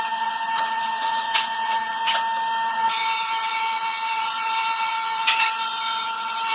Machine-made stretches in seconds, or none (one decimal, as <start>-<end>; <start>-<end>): 0.0-2.0; 2.7-6.5